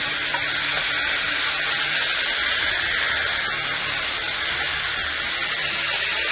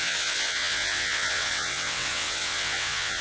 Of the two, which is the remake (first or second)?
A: second